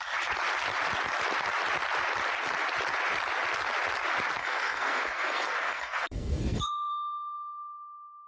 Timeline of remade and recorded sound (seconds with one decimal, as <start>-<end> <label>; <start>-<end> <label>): 0.0-4.4 recorded; 4.4-6.9 remade; 6.9-8.3 recorded